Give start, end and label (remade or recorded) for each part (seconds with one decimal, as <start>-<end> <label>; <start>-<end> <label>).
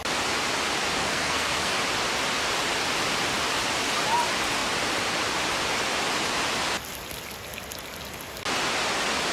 0.0-1.0 recorded; 1.0-1.7 remade; 1.7-9.3 recorded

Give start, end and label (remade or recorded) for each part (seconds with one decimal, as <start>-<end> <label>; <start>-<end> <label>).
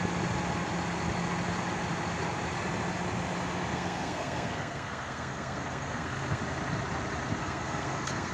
0.0-3.7 recorded; 3.7-6.4 remade; 6.4-7.4 recorded; 7.4-8.3 remade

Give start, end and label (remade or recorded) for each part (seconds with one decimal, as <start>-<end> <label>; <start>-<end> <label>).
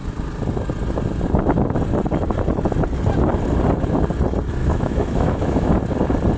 0.0-4.6 recorded; 4.6-5.7 remade; 5.7-6.4 recorded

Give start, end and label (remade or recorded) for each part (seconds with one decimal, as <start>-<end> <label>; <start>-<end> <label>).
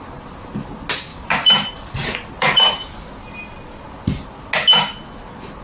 0.0-1.1 recorded; 1.1-2.9 remade; 2.9-5.6 recorded